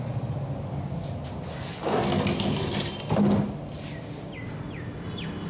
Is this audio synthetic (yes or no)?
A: no